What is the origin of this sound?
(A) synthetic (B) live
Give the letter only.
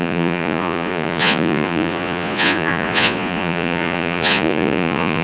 A